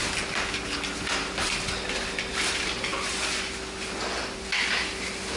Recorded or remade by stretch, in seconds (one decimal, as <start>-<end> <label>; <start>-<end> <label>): 0.0-5.4 recorded